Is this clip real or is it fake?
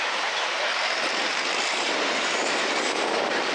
fake